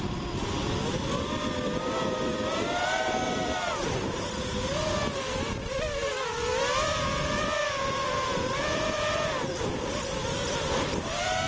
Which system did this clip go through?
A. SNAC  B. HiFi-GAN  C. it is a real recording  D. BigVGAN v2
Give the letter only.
D